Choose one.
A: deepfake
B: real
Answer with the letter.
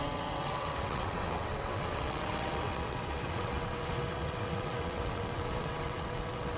A